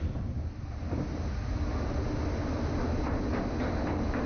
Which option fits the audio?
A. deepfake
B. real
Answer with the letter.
B